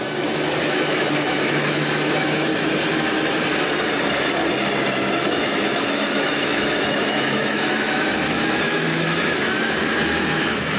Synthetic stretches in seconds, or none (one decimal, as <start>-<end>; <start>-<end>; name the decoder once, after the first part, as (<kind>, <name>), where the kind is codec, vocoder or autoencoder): 0.0-2.5 (autoencoder, DAC-VAE); 5.3-10.8